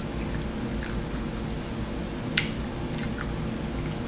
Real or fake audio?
real